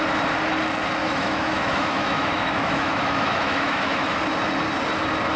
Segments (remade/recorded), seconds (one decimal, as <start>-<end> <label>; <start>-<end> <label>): 0.0-1.0 recorded; 1.0-4.2 remade; 4.2-5.4 recorded